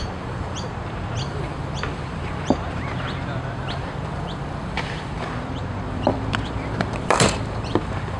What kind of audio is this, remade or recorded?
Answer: remade